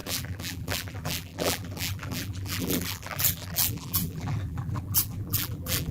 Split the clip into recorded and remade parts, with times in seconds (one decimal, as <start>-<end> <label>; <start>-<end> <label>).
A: 0.0-5.9 remade